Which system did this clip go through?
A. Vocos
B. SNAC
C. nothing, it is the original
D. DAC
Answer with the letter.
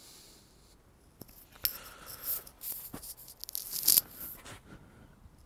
C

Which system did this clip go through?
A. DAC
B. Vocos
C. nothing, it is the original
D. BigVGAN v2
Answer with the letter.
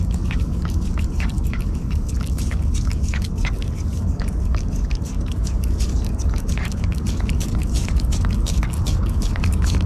A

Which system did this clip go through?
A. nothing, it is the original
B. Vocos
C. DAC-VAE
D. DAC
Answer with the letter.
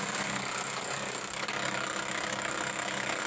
D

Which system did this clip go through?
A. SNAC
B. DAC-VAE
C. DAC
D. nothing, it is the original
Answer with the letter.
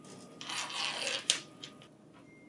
D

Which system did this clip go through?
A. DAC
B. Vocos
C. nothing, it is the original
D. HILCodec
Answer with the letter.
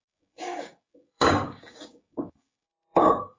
A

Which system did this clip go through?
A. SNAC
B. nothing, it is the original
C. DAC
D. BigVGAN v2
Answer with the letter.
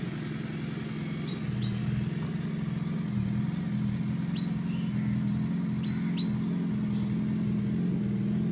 B